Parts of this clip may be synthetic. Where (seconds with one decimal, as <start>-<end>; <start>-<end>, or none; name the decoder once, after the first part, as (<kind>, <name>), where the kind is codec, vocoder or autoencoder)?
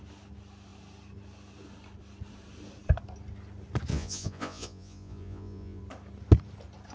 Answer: 3.9-5.8 (vocoder, Vocos)